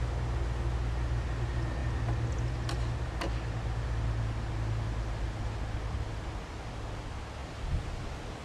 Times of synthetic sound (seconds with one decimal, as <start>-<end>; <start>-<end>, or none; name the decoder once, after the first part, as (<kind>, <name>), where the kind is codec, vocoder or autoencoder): none